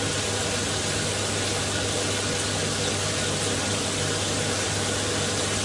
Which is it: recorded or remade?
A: recorded